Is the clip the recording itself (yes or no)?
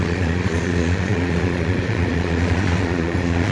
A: no